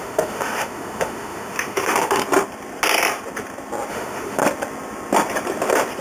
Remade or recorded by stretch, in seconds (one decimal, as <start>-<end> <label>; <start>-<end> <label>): 0.0-2.2 remade; 2.2-3.9 recorded; 3.9-4.4 remade; 4.4-6.0 recorded